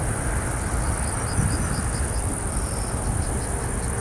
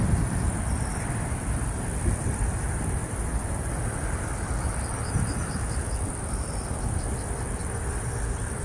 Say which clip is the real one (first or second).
first